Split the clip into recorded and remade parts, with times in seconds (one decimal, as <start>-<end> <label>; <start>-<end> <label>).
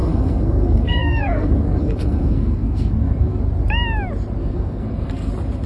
0.0-3.4 remade; 3.4-4.4 recorded; 4.4-5.3 remade; 5.3-5.7 recorded